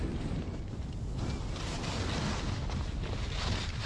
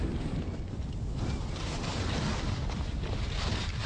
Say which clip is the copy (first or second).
second